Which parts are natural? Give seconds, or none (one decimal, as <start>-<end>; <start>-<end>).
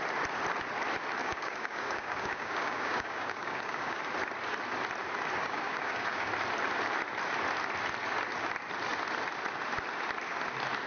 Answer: 0.0-1.2; 4.0-5.4; 6.3-10.9